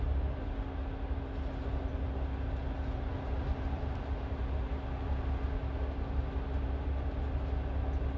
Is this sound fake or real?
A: real